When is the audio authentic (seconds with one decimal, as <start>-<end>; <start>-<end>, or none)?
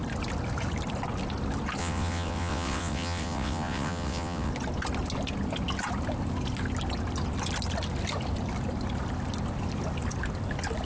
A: 0.0-1.8; 4.5-10.8